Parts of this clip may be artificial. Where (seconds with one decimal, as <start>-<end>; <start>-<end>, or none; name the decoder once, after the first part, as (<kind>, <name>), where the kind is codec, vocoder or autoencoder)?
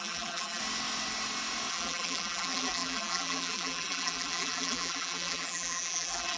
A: 0.0-0.6 (vocoder, BigVGAN v2); 1.7-6.4